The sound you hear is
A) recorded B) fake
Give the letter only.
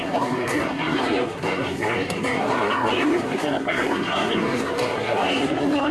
B